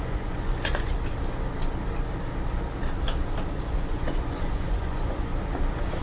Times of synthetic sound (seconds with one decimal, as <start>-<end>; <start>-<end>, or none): 0.0-0.9; 3.9-5.3